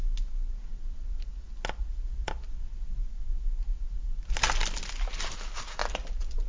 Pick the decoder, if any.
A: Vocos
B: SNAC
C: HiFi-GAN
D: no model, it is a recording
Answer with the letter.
D